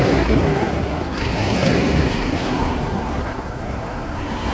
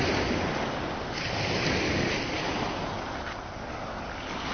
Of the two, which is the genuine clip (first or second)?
second